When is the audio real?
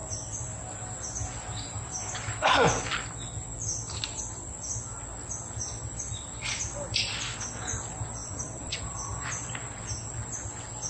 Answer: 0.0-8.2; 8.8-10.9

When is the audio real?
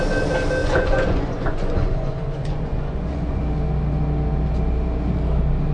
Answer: 0.0-0.6; 3.4-5.7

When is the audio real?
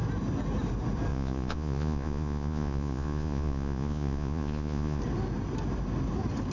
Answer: 0.0-1.1; 5.0-6.5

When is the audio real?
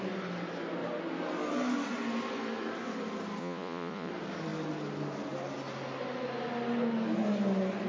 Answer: 0.0-3.4; 4.1-7.9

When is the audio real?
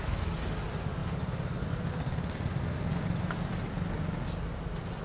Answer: 0.0-5.0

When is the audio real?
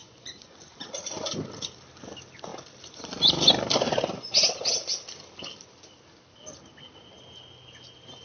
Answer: 0.7-8.2